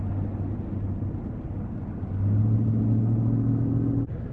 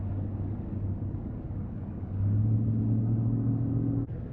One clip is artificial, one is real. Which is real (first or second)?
first